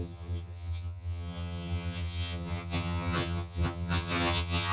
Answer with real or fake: fake